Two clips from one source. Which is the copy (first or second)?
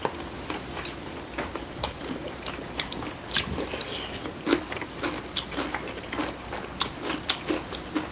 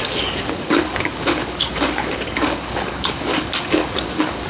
second